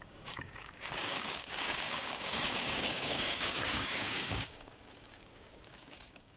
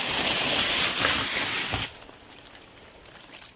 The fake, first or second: first